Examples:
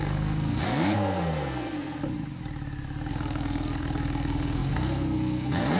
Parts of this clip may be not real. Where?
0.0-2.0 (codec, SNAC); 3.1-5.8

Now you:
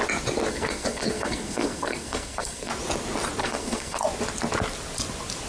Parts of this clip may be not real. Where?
0.5-2.7 (codec, SNAC); 3.4-4.0

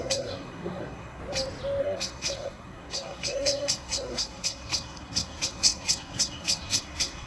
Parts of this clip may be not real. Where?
0.0-1.2 (codec, SNAC); 1.8-7.3

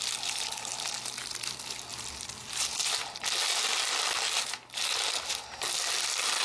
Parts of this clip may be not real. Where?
none

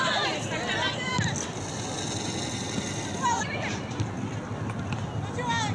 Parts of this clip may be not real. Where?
none